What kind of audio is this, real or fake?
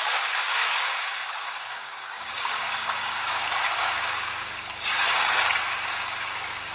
fake